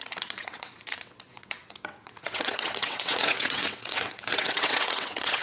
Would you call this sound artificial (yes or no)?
yes